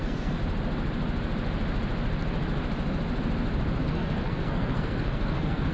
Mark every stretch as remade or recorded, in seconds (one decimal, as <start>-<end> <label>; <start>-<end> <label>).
0.0-0.4 remade; 0.4-3.8 recorded; 3.8-5.7 remade